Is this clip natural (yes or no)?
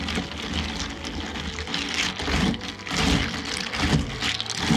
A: yes